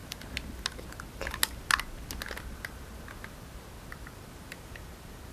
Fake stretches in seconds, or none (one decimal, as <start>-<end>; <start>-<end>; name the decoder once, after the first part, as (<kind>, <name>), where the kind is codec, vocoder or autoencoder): none